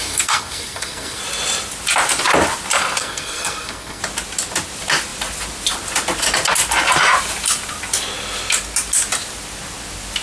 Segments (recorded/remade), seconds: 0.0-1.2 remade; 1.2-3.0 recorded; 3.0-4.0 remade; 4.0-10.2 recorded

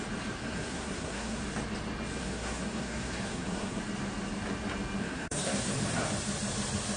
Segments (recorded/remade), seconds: 0.0-0.4 recorded; 0.4-1.4 remade; 1.4-2.2 recorded; 2.2-3.8 remade; 3.8-5.0 recorded; 5.0-5.7 remade; 5.7-7.0 recorded

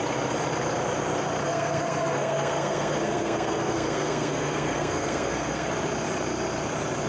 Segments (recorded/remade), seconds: 0.0-1.4 recorded; 1.4-5.7 remade; 5.7-7.1 recorded

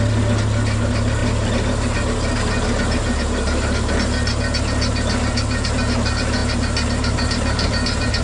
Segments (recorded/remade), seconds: 0.0-8.2 recorded

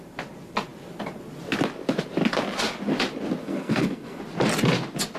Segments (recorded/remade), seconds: 0.0-3.4 recorded; 3.4-4.2 remade; 4.2-5.2 recorded

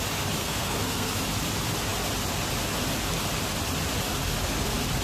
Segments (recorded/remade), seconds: 0.0-0.4 recorded; 0.4-1.1 remade; 1.1-5.0 recorded

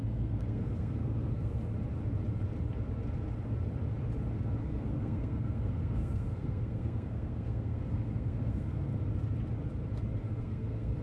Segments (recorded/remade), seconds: 0.0-1.6 remade; 1.6-4.6 recorded; 4.6-8.9 remade; 8.9-10.4 recorded; 10.4-11.0 remade